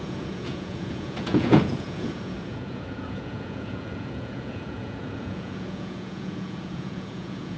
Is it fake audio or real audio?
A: fake